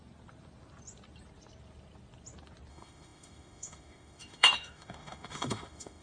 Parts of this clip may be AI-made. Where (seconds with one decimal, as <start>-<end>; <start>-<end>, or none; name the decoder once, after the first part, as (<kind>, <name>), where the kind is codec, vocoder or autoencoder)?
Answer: 2.7-6.0 (autoencoder, DAC-VAE)